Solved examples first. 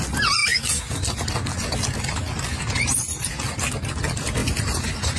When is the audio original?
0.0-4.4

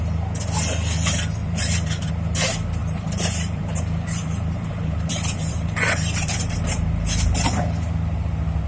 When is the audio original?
0.0-1.4; 2.1-2.8; 6.9-8.7

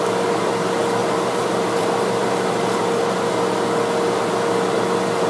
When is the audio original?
0.0-1.0; 2.8-5.3

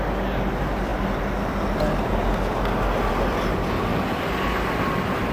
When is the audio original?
0.0-5.3

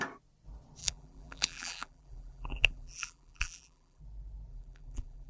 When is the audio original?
0.0-0.8; 4.0-4.5